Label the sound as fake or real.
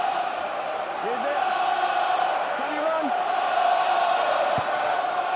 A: real